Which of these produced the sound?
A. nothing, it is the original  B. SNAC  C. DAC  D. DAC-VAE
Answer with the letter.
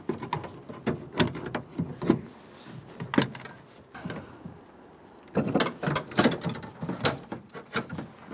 A